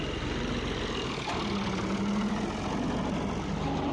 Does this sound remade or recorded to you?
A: recorded